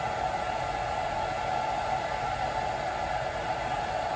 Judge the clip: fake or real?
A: real